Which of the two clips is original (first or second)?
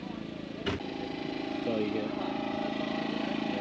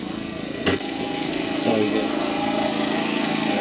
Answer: first